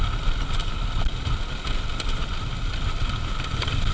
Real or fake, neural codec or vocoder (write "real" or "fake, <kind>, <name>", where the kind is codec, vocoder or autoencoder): real